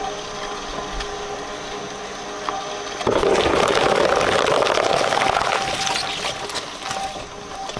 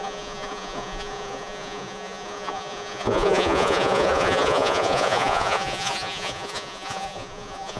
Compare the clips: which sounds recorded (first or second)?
first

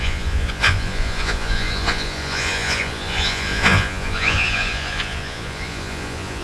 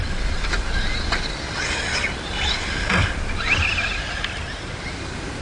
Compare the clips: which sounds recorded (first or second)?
second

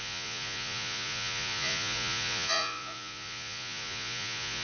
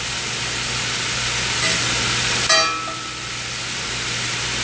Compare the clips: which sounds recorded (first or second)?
second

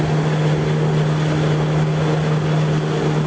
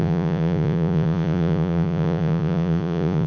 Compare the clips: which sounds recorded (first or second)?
first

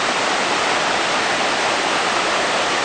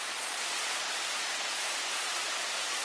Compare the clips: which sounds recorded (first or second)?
first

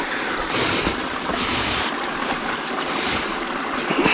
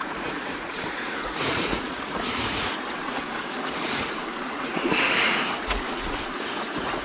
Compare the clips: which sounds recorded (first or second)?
first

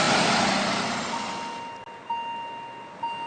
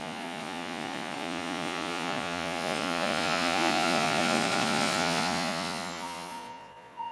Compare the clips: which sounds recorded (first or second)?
first